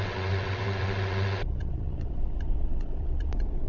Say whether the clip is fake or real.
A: fake